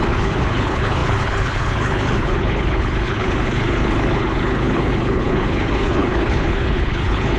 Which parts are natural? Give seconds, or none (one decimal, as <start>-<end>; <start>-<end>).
none